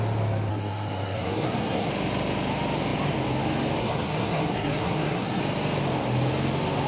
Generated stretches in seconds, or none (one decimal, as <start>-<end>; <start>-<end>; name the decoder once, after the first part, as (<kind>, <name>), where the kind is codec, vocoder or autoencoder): 0.5-1.9 (codec, SNAC); 3.8-5.4